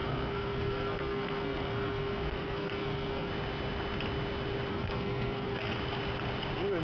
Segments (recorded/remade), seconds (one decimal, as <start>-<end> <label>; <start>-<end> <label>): 0.0-3.3 remade; 3.3-4.7 recorded; 4.7-5.8 remade; 5.8-6.8 recorded